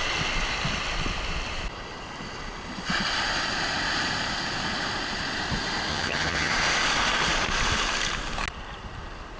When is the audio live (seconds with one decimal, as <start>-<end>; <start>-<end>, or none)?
0.0-5.9; 6.5-9.4